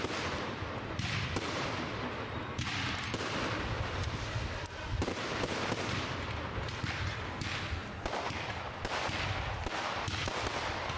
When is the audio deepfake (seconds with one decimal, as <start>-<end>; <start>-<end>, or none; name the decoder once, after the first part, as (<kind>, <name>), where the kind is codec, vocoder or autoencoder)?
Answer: none